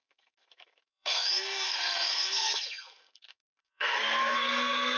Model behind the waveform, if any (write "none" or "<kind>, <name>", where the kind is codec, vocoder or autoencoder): codec, SNAC